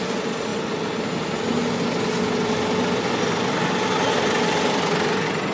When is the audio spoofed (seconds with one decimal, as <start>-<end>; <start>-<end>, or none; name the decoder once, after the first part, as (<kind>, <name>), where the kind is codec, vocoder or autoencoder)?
none